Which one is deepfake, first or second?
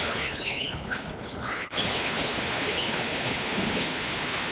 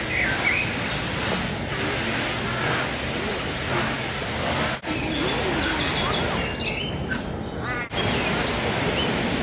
first